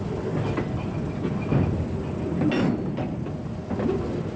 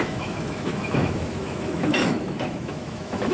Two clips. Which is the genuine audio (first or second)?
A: first